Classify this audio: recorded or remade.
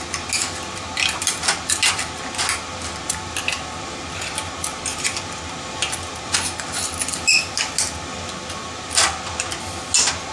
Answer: recorded